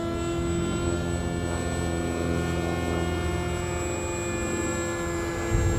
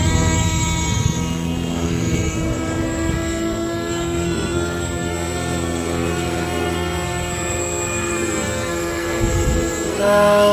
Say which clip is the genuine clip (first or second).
first